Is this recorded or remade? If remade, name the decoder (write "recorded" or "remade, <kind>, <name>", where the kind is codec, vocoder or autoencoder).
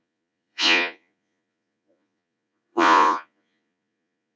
remade, vocoder, Vocos